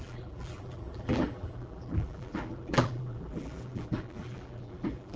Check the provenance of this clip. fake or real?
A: fake